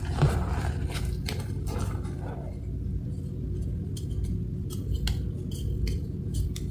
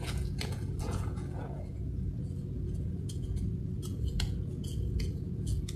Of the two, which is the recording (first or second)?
first